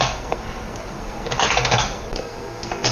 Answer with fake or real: fake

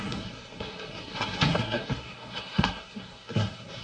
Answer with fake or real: fake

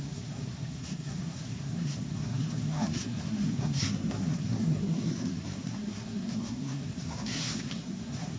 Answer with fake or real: fake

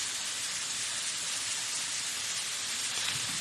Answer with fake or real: real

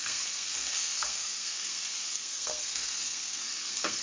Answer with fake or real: fake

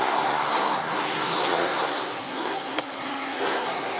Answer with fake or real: fake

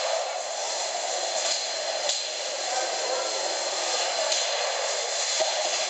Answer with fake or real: real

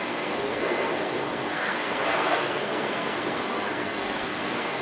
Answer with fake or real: fake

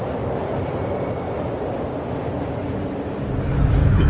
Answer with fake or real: real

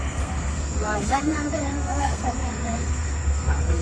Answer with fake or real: fake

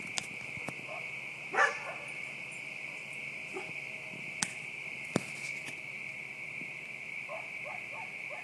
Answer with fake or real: real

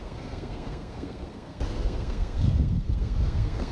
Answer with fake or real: fake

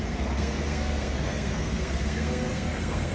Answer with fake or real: fake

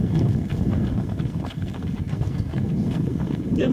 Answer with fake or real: fake